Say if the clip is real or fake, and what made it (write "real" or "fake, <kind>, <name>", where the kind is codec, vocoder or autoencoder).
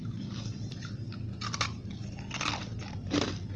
real